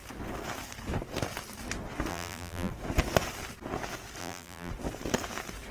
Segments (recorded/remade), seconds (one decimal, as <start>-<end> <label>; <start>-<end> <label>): 0.0-2.1 recorded; 2.1-2.7 remade; 2.7-4.2 recorded; 4.2-4.7 remade; 4.7-5.7 recorded

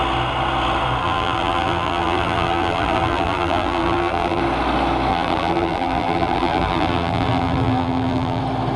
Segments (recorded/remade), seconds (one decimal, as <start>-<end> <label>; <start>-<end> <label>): 0.0-1.0 recorded; 1.0-4.4 remade; 4.4-5.1 recorded; 5.1-8.4 remade; 8.4-8.8 recorded

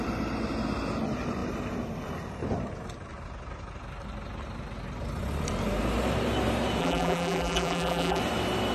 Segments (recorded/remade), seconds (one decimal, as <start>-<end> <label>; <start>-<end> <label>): 0.0-6.8 recorded; 6.8-8.2 remade; 8.2-8.7 recorded

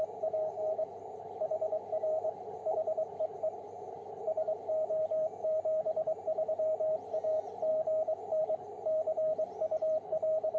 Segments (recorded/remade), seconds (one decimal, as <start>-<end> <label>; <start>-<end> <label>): 0.0-7.7 remade; 7.7-8.4 recorded; 8.4-10.6 remade

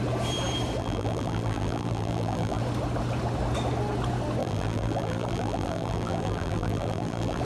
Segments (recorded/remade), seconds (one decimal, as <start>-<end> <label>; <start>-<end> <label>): 0.0-0.8 recorded; 0.8-2.6 remade; 2.6-4.4 recorded; 4.4-7.4 remade

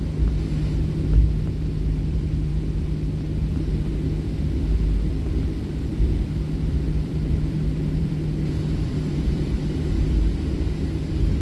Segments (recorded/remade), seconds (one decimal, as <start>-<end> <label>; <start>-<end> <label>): 0.0-5.9 recorded; 5.9-9.8 remade; 9.8-11.4 recorded

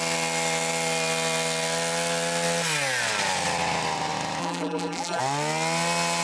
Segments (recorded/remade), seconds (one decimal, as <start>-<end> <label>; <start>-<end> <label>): 0.0-4.4 recorded; 4.4-5.2 remade; 5.2-6.2 recorded